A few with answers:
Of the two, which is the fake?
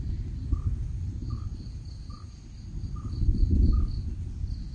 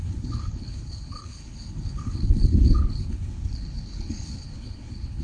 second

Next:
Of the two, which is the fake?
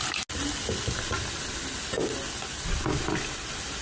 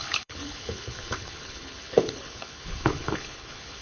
second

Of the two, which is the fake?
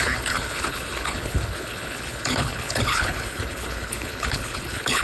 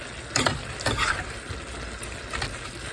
first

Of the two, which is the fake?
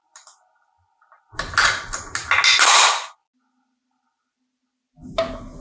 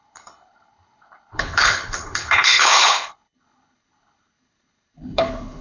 second